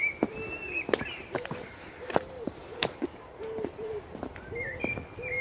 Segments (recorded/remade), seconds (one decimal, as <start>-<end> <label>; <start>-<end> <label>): 0.0-1.1 recorded; 1.1-4.3 remade; 4.3-5.4 recorded